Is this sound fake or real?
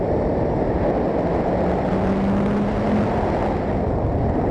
real